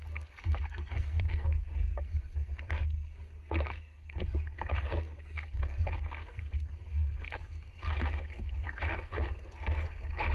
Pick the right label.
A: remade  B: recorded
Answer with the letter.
A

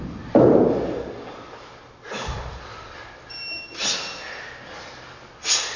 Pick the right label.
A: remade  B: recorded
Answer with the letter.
B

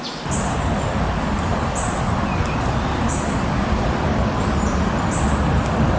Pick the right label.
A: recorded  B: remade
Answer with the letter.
A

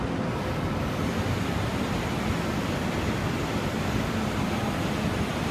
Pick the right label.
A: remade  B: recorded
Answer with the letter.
B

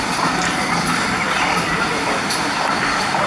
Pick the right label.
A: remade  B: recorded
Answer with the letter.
B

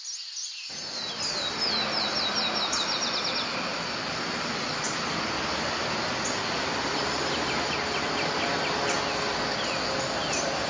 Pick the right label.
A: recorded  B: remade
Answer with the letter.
A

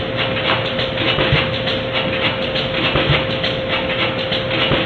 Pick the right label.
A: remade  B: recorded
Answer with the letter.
B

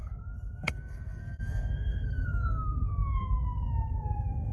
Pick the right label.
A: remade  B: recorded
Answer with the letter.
A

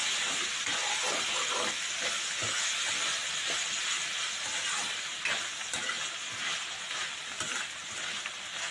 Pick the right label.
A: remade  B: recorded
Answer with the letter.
B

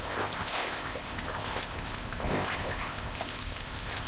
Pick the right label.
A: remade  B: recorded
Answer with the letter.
A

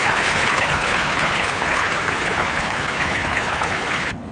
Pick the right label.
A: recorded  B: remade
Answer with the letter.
B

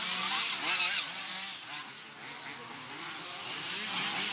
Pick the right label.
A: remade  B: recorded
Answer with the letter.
B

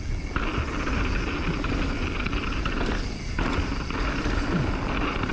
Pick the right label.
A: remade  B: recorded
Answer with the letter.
B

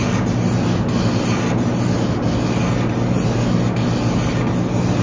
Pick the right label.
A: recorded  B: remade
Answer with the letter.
A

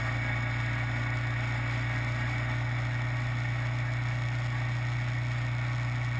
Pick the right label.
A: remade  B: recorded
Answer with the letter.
B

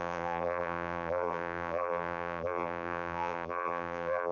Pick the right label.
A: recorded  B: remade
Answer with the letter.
B